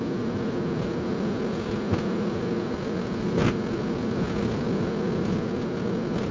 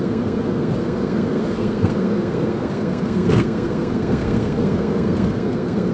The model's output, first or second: second